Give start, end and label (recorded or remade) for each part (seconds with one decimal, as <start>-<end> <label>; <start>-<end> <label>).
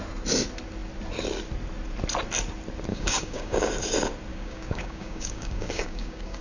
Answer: 0.0-2.9 recorded; 2.9-3.7 remade; 3.7-4.3 recorded; 4.3-6.4 remade